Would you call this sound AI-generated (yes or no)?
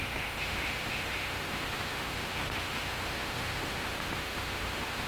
yes